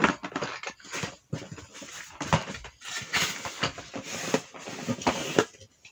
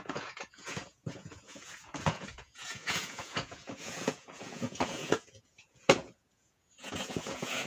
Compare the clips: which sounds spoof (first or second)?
second